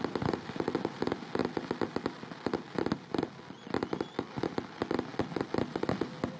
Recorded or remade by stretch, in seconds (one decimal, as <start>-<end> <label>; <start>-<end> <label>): 0.0-6.4 recorded